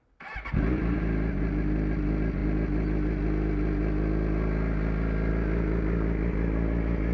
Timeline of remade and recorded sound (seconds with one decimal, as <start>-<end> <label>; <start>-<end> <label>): 0.0-7.1 recorded